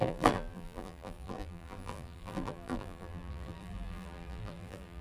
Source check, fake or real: fake